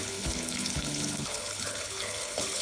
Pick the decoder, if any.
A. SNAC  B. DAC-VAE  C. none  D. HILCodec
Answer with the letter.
D